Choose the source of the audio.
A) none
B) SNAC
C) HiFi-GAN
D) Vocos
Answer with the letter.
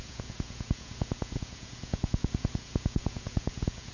D